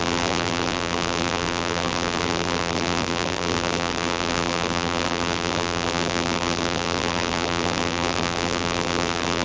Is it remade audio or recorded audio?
remade